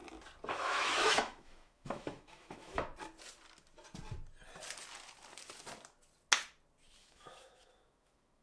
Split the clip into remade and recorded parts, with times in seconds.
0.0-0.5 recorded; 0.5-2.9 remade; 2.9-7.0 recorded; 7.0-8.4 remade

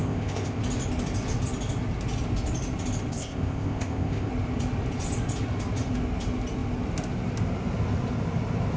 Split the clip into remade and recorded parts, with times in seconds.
0.0-0.6 remade; 0.6-3.1 recorded; 3.1-4.3 remade; 4.3-8.8 recorded

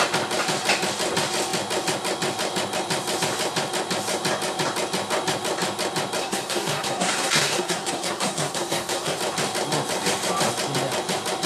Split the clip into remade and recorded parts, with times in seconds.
0.0-6.2 recorded; 6.2-9.2 remade; 9.2-11.5 recorded

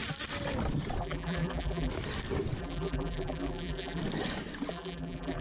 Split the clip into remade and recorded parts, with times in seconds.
0.0-1.0 recorded; 1.0-1.9 remade; 1.9-2.6 recorded; 2.6-4.0 remade; 4.0-4.7 recorded; 4.7-5.4 remade

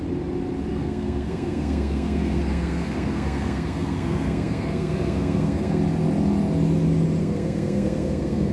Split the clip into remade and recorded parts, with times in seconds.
0.0-0.7 recorded; 0.7-5.8 remade; 5.8-7.2 recorded; 7.2-8.5 remade